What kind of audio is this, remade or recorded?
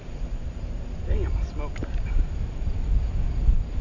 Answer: recorded